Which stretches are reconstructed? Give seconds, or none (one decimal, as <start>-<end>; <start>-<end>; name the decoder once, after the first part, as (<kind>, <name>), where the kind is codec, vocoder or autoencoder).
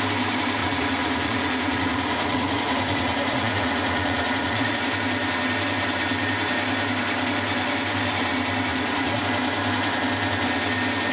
0.6-4.9 (vocoder, Vocos); 8.7-9.2